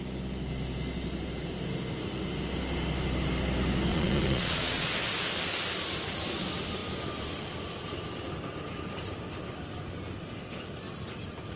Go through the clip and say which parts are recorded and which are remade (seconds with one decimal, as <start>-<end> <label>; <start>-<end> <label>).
0.0-3.9 recorded; 3.9-4.9 remade; 4.9-11.6 recorded

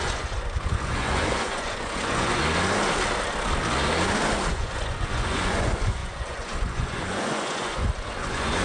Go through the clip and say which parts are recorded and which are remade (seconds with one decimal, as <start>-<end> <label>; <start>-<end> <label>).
0.0-2.4 remade; 2.4-4.5 recorded; 4.5-8.6 remade